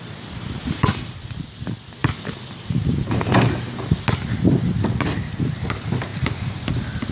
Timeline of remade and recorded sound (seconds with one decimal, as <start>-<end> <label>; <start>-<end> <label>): 0.0-7.1 recorded